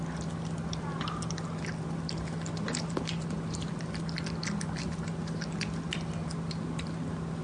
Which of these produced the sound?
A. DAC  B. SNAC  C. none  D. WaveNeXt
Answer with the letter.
C